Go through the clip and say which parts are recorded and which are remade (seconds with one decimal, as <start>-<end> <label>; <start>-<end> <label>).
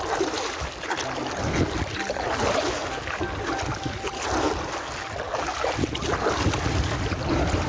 0.0-7.7 recorded